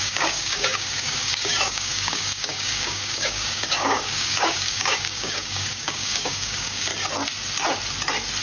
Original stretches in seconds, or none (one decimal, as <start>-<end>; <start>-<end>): 6.9-8.4